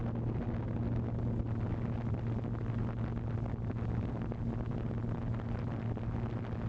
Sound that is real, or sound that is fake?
real